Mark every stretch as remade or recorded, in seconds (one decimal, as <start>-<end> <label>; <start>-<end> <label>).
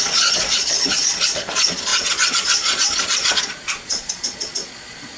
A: 0.0-5.2 remade